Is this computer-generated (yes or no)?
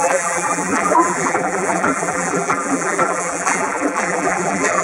yes